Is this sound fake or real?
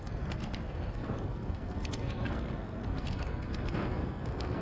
fake